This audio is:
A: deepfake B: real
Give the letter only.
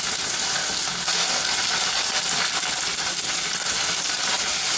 B